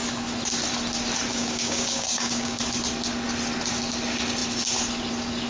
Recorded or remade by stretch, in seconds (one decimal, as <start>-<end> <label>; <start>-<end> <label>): 0.0-1.3 recorded; 1.3-2.6 remade; 2.6-5.5 recorded